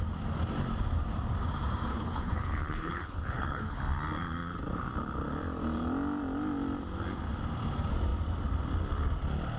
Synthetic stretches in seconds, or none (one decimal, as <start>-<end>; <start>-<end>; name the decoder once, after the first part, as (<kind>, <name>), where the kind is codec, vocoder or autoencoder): 1.9-3.8 (codec, HILCodec)